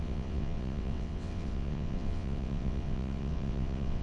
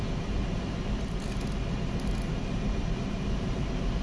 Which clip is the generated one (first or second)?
first